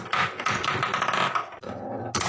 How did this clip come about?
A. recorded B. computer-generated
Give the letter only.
A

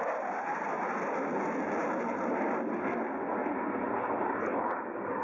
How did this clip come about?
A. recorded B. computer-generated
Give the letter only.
A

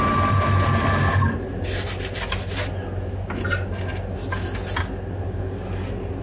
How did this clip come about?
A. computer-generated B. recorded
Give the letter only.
B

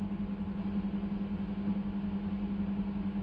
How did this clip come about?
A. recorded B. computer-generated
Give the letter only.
A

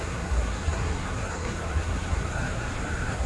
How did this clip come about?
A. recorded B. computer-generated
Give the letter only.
B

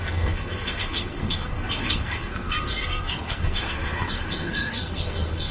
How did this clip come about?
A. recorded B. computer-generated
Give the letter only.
B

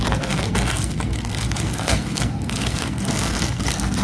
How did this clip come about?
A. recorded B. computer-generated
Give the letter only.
B